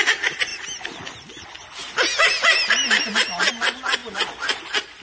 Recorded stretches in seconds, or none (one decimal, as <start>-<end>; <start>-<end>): 0.0-5.0